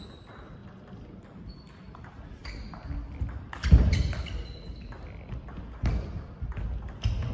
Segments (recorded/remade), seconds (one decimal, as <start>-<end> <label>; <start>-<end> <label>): 0.0-7.3 recorded